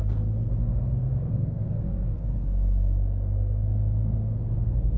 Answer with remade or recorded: remade